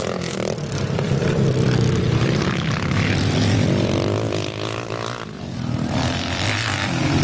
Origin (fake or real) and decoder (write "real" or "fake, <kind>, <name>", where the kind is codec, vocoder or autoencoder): real